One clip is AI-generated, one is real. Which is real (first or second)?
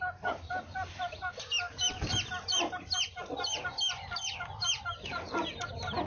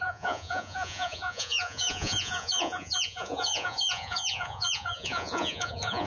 first